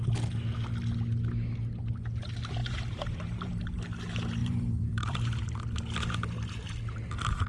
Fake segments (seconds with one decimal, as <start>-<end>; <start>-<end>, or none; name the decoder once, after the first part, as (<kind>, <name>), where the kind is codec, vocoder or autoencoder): 2.6-3.5 (vocoder, BigVGAN v2); 4.4-5.4

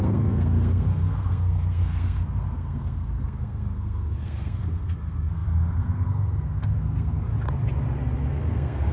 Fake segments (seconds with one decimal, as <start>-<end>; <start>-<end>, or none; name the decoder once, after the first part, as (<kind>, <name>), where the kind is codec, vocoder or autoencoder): 0.0-7.3 (codec, SNAC); 8.3-8.9

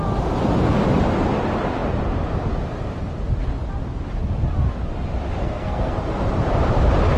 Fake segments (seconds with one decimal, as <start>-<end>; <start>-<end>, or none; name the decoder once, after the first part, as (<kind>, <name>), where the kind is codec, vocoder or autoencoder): 5.4-6.2 (codec, SNAC)

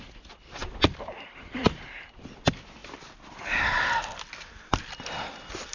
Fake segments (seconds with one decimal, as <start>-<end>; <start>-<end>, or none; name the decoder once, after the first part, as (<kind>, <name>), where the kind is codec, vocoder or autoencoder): 0.6-1.4 (vocoder, BigVGAN v2)

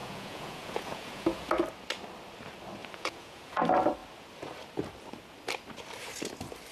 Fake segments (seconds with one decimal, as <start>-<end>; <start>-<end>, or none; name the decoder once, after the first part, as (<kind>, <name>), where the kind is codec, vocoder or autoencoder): 0.0-1.5 (vocoder, Vocos); 2.8-3.6